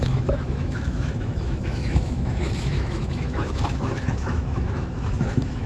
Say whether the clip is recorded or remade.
remade